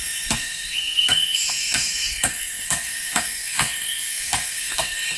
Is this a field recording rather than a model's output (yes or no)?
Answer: no